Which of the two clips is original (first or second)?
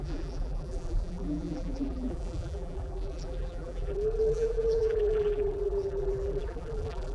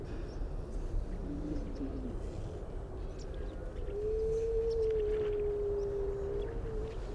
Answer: second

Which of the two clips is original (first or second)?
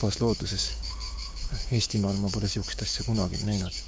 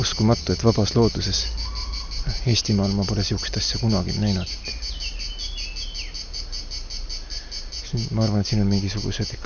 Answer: second